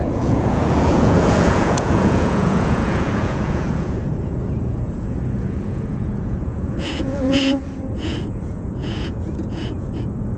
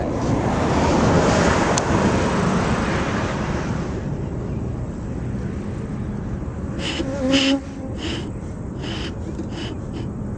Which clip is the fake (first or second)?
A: first